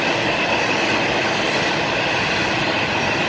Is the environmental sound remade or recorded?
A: recorded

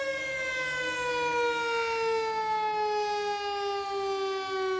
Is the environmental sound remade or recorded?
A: recorded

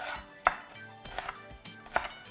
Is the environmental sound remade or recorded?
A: recorded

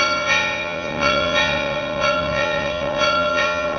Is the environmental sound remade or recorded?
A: remade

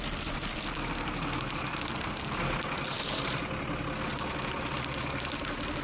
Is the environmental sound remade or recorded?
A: recorded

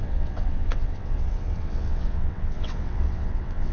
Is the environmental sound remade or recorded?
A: remade